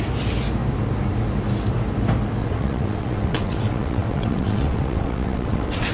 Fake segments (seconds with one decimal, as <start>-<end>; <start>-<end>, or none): 2.4-5.9